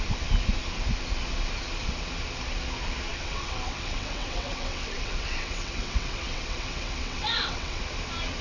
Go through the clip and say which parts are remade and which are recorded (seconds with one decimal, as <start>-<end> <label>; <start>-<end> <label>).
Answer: 0.0-3.1 recorded; 3.1-7.8 remade; 7.8-8.4 recorded